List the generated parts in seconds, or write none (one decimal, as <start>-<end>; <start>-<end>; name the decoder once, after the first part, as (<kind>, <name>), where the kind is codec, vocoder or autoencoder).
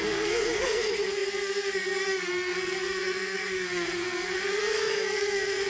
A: 0.0-5.7 (codec, SNAC)